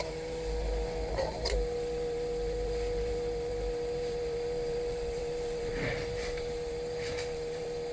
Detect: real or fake fake